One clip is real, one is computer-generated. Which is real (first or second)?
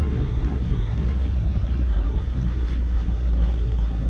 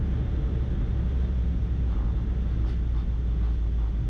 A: second